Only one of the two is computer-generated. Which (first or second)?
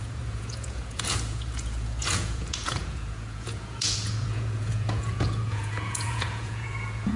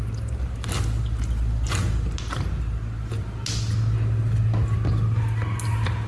first